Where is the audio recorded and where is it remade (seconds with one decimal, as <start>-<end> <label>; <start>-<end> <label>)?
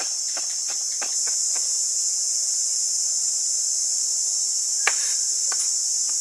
0.0-1.8 recorded; 1.8-2.8 remade; 2.8-6.2 recorded